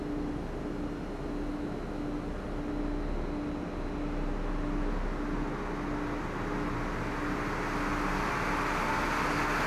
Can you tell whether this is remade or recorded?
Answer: recorded